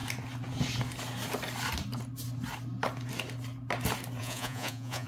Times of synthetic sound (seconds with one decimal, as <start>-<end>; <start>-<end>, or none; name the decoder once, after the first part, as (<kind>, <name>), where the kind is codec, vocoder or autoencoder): 4.2-5.1 (vocoder, Vocos)